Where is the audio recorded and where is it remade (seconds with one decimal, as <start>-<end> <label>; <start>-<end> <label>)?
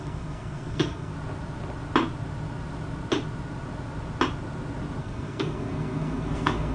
0.0-1.1 remade; 1.1-5.0 recorded; 5.0-6.7 remade